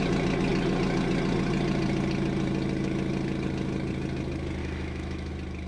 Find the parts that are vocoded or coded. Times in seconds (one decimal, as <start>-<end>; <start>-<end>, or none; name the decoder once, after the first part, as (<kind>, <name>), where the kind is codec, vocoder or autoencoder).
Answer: 4.6-5.3 (autoencoder, DAC-VAE)